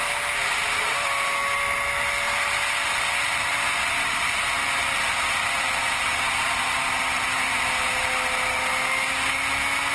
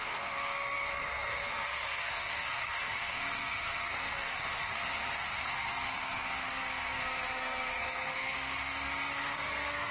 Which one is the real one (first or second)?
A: first